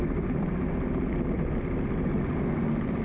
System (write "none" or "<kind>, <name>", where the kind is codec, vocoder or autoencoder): none